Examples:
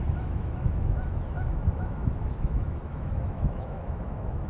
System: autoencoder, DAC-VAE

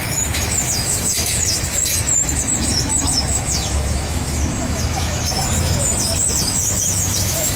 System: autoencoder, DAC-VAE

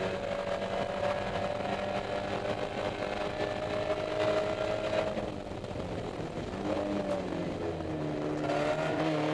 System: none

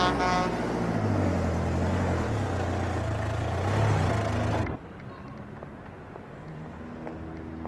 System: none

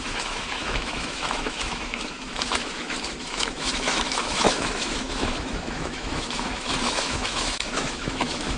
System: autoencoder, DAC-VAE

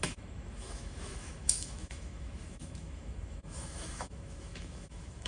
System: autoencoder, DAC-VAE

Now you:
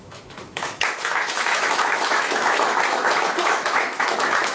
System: autoencoder, DAC-VAE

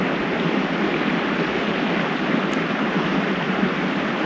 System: none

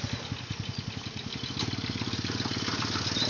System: none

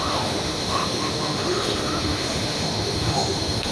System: autoencoder, DAC-VAE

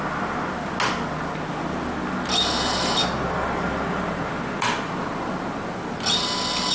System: none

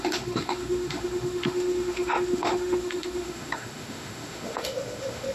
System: autoencoder, DAC-VAE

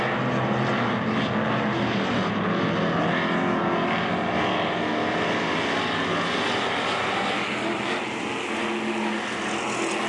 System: none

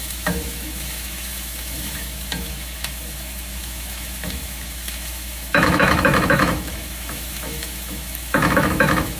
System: autoencoder, DAC-VAE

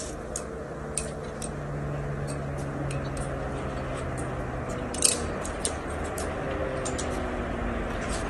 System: none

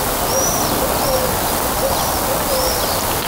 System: none